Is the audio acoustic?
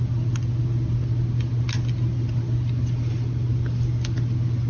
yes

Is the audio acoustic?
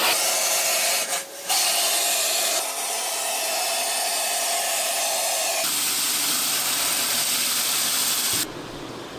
yes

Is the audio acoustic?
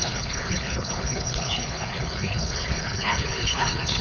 no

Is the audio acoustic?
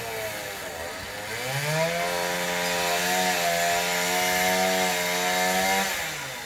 yes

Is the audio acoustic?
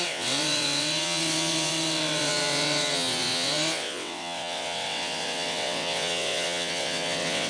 no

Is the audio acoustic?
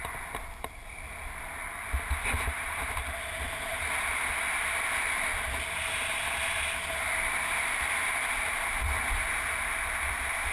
yes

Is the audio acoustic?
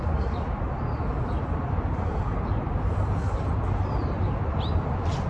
yes